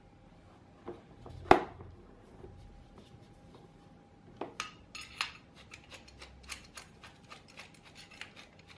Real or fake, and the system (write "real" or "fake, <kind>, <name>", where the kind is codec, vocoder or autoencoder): real